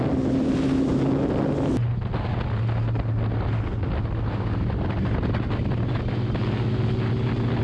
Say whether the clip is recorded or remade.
recorded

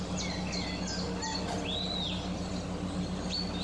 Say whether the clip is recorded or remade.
recorded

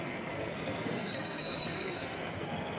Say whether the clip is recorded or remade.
remade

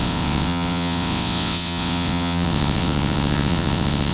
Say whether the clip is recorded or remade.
remade